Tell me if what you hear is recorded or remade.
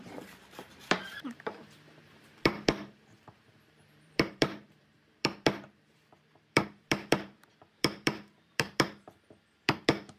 remade